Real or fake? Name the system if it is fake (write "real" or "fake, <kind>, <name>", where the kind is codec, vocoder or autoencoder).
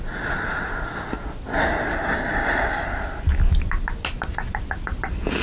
real